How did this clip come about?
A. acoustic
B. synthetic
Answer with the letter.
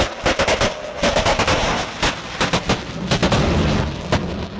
A